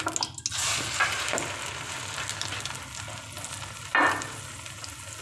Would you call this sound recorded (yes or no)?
yes